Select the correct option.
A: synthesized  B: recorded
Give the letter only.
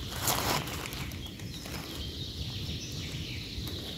B